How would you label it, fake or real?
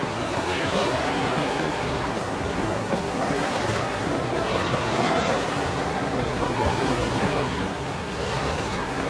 fake